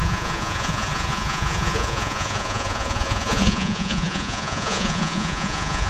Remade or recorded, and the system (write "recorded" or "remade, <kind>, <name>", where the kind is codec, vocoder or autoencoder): remade, vocoder, Vocos